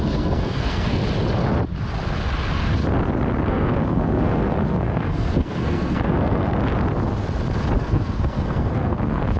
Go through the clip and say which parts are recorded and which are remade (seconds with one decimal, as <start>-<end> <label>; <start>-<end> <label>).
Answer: 0.0-1.0 remade; 1.0-3.5 recorded; 3.5-6.5 remade; 6.5-7.8 recorded; 7.8-9.4 remade